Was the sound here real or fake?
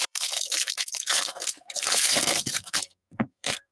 fake